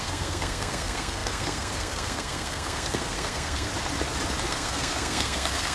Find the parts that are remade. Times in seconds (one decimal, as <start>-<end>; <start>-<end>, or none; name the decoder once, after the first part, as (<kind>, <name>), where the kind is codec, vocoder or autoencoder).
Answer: 0.0-3.7 (codec, SNAC); 4.5-5.7